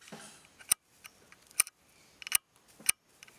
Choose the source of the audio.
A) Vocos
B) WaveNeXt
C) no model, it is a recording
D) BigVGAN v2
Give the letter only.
C